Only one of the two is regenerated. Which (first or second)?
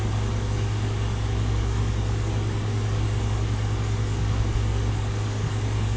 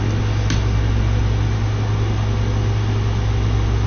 first